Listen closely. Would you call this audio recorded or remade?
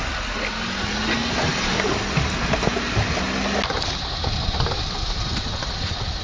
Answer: recorded